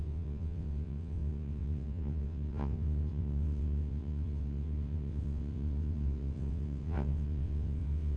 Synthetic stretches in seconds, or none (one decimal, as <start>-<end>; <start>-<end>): 0.0-8.2